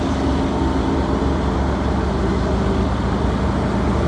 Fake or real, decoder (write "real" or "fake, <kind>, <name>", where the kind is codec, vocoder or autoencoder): real